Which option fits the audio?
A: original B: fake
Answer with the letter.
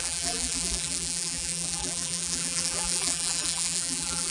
B